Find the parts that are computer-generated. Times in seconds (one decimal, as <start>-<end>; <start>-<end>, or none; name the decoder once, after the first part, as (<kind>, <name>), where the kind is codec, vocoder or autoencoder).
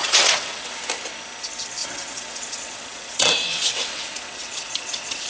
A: 0.0-0.7 (vocoder, WaveNeXt); 1.8-5.3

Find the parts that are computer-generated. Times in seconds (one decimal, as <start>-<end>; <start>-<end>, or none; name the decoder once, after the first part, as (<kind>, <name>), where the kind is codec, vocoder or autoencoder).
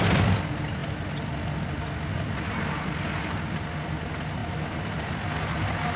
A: none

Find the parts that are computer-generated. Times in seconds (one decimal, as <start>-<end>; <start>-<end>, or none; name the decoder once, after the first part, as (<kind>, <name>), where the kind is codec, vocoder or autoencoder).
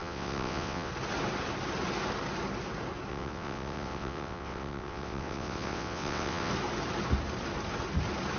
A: 0.0-0.9 (vocoder, WaveNeXt); 3.1-6.5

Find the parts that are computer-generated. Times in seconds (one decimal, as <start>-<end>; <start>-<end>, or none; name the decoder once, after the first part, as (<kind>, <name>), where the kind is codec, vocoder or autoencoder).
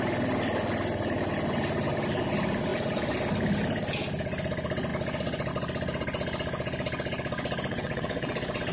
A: 7.7-8.7 (vocoder, WaveNeXt)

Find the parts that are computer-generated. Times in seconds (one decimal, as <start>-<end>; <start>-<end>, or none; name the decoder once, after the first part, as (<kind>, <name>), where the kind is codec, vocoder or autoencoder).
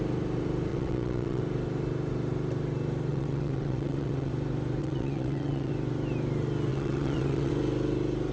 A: 0.7-1.4 (vocoder, WaveNeXt); 3.1-4.3; 4.8-5.7; 6.7-7.5